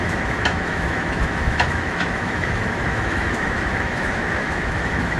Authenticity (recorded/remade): remade